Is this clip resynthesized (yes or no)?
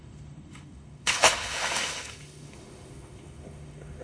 yes